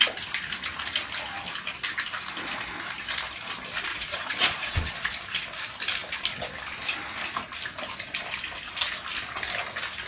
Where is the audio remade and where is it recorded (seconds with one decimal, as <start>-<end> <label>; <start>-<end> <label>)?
0.0-3.9 recorded; 3.9-4.9 remade; 4.9-10.1 recorded